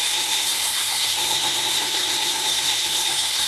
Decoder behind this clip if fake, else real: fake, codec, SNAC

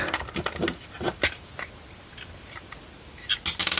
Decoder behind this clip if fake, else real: real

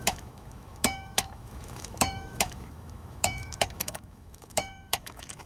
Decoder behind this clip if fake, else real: fake, autoencoder, DAC-VAE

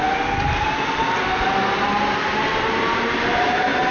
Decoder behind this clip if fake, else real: real